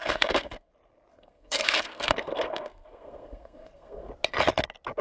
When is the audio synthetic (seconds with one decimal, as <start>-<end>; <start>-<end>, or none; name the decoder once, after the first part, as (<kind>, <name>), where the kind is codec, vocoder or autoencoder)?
0.0-0.7 (codec, SNAC); 1.1-4.1